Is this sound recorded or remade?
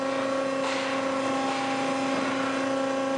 recorded